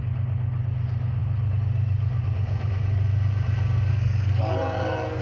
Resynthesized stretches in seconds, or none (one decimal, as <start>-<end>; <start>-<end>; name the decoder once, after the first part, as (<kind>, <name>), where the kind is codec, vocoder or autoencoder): 3.9-5.2 (codec, SNAC)